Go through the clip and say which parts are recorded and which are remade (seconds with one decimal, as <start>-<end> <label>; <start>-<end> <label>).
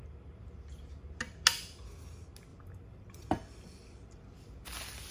0.0-2.5 recorded; 2.5-5.1 remade